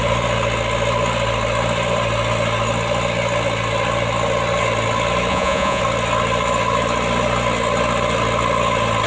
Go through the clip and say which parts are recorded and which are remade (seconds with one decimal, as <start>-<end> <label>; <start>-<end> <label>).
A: 0.0-5.3 recorded; 5.3-5.8 remade; 5.8-9.1 recorded